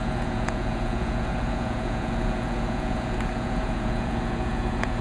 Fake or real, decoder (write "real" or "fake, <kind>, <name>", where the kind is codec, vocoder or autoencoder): fake, vocoder, Vocos